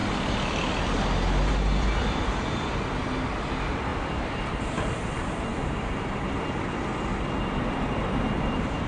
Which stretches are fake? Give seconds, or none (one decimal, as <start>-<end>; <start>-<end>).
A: 1.5-8.9